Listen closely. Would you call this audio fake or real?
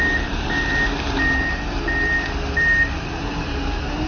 real